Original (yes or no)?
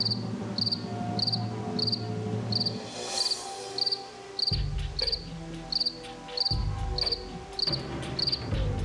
yes